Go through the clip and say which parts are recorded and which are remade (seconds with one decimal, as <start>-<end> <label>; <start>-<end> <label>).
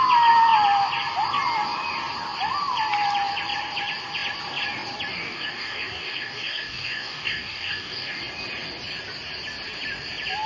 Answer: 0.0-5.1 recorded; 5.1-8.2 remade; 8.2-10.5 recorded